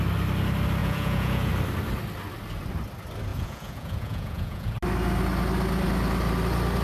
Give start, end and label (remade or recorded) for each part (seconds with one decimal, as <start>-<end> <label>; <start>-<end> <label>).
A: 0.0-0.8 recorded; 0.8-1.5 remade; 1.5-3.3 recorded; 3.3-4.8 remade; 4.8-6.8 recorded